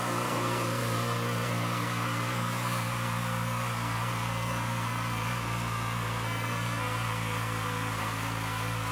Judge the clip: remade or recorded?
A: remade